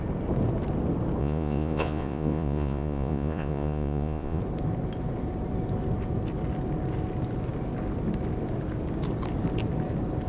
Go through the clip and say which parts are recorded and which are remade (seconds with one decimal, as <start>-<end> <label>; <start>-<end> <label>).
0.0-1.2 recorded; 1.2-4.4 remade; 4.4-10.3 recorded